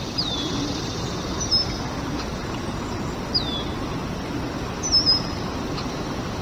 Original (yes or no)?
yes